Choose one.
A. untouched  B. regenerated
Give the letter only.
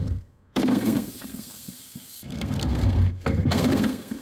B